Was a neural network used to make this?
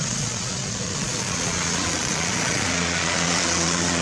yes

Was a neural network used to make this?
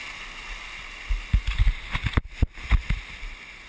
no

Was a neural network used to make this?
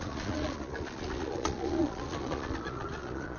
yes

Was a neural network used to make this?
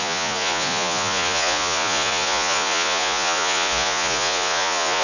yes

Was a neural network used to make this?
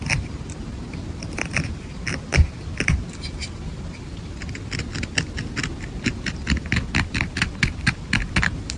no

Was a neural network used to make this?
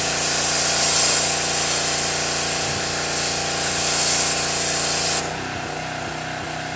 no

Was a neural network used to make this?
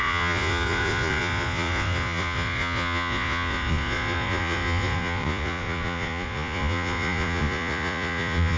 yes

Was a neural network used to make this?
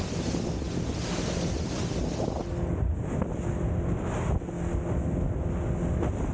no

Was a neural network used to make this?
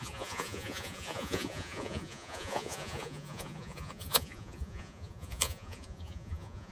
yes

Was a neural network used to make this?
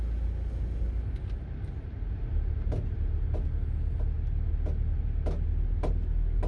no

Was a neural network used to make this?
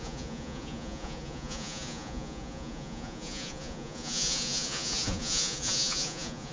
yes